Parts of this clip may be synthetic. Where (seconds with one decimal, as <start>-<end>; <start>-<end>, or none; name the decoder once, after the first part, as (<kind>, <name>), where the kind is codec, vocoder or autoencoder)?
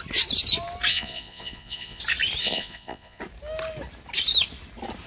0.9-2.0 (vocoder, Vocos); 2.4-3.2